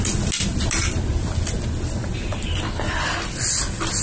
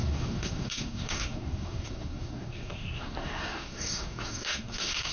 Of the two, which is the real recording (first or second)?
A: first